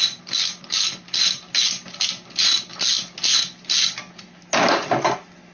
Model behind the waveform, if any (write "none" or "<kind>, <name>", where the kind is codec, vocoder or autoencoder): none